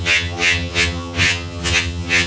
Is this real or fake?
fake